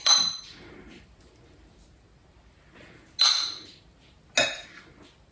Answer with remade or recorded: recorded